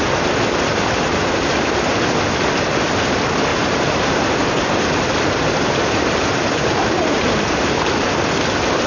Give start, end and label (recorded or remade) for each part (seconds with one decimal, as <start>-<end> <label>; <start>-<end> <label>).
0.0-1.2 recorded; 1.2-1.8 remade; 1.8-3.5 recorded; 3.5-8.1 remade; 8.1-8.9 recorded